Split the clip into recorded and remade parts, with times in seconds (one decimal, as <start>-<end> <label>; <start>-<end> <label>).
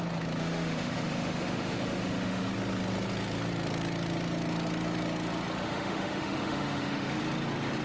0.0-0.4 recorded; 0.4-2.5 remade; 2.5-5.6 recorded; 5.6-7.2 remade; 7.2-7.8 recorded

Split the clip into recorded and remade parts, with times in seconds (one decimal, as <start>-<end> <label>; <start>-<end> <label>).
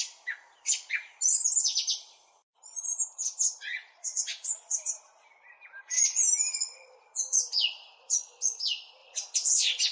0.0-2.9 recorded; 2.9-7.5 remade; 7.5-9.9 recorded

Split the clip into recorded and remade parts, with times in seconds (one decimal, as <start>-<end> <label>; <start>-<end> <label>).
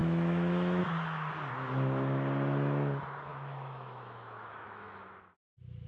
0.0-0.8 remade; 0.8-3.3 recorded; 3.3-5.2 remade; 5.2-5.9 recorded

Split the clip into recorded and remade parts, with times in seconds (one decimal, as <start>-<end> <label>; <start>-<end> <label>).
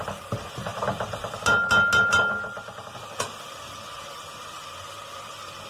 0.0-5.7 recorded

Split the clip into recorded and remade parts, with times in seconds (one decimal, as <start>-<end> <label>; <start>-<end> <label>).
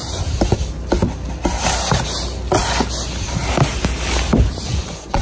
0.0-4.7 recorded; 4.7-5.2 remade